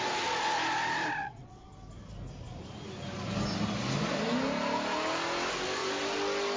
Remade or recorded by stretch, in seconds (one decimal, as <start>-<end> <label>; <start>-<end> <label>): 0.0-1.2 recorded; 1.2-1.7 remade; 1.7-6.6 recorded